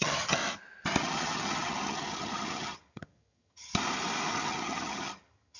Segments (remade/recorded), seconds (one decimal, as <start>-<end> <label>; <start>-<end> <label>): 0.0-0.4 remade; 0.4-1.0 recorded; 1.0-3.7 remade; 3.7-4.3 recorded; 4.3-5.6 remade